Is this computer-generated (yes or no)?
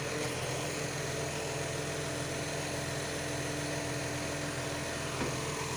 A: no